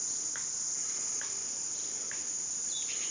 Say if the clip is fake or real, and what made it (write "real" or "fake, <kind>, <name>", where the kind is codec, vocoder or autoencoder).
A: real